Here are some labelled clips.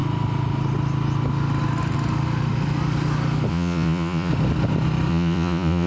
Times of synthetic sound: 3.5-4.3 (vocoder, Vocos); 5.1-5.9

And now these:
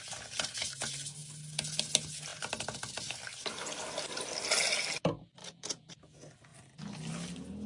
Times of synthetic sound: 5.4-5.9 (vocoder, Vocos)

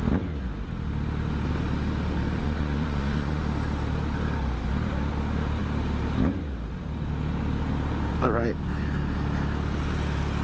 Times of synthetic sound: 2.4-3.4 (vocoder, Vocos)

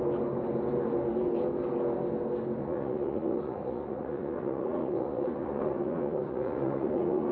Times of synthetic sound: 2.6-7.3 (vocoder, Vocos)

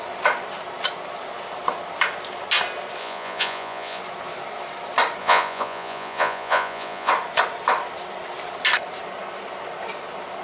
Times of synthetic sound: 3.0-4.0 (vocoder, Vocos); 5.2-7.1

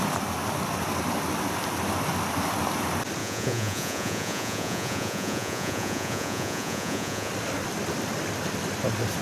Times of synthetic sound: 3.2-7.3 (vocoder, Vocos)

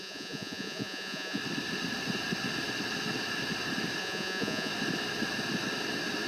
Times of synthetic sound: 0.0-1.4 (vocoder, Vocos); 4.0-4.7

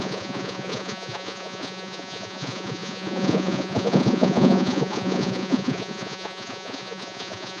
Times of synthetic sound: 0.0-7.6 (vocoder, Vocos)